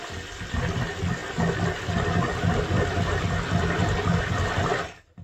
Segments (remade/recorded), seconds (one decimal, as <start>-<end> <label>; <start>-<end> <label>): 0.0-5.2 recorded